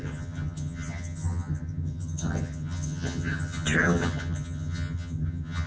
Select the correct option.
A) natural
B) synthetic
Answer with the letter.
B